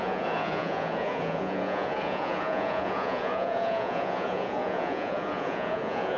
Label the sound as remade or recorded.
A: remade